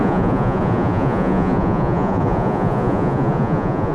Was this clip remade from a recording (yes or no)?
yes